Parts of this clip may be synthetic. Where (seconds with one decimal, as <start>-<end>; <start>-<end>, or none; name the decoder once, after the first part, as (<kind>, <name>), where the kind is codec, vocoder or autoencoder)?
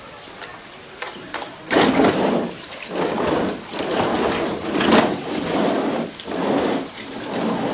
1.2-2.8 (vocoder, BigVGAN v2)